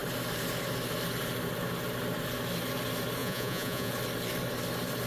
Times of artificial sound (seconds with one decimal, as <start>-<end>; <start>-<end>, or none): 3.2-3.9